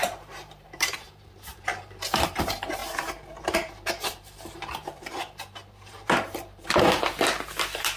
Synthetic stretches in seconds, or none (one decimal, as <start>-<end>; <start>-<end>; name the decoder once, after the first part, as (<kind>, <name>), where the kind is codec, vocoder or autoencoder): 0.0-2.8 (vocoder, BigVGAN v2); 3.4-8.0